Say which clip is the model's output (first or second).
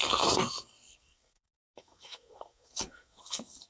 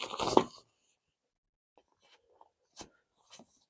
first